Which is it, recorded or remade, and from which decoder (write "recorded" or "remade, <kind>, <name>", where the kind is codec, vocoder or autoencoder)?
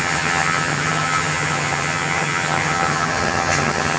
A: remade, vocoder, HiFi-GAN